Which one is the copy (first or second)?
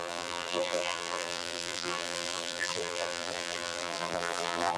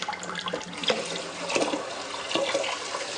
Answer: first